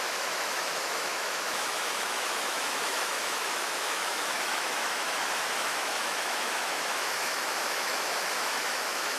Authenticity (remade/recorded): remade